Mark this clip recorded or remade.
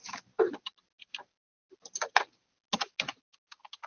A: recorded